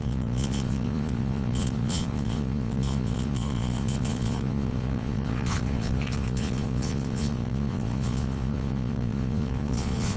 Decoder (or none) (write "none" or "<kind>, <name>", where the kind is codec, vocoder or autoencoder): vocoder, Vocos